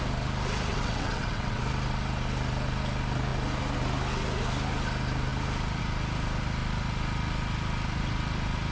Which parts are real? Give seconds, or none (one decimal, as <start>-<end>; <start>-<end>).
0.0-0.7; 1.6-8.7